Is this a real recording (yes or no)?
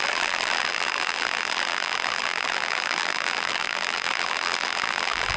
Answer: no